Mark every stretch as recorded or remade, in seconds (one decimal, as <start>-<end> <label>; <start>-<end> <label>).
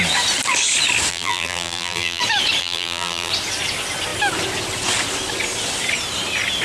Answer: 0.0-1.1 recorded; 1.1-2.2 remade; 2.2-2.6 recorded; 2.6-3.3 remade; 3.3-6.6 recorded